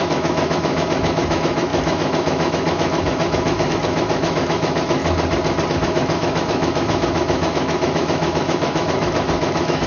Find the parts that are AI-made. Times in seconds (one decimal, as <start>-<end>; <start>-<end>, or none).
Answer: 0.0-5.0; 5.7-9.9